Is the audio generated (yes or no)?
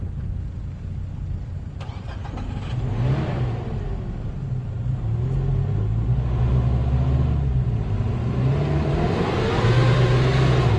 no